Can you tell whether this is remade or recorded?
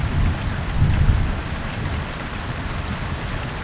recorded